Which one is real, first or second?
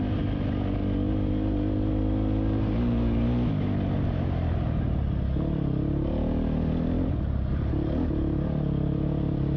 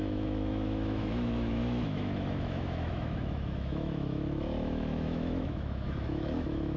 first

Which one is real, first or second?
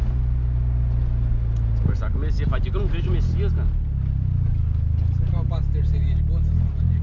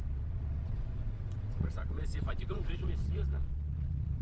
first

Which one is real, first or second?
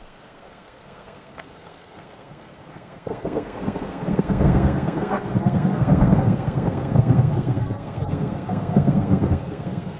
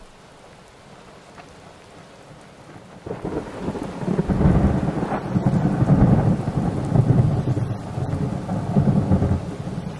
second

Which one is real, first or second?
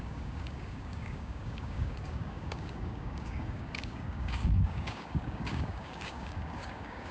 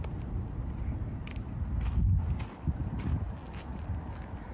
second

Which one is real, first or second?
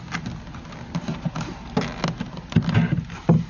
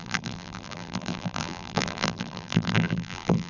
first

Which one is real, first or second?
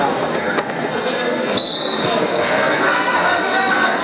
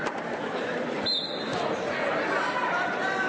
second